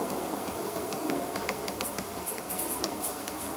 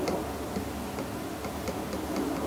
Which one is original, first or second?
second